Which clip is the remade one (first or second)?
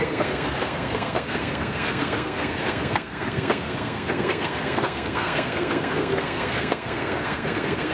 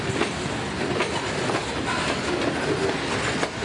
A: first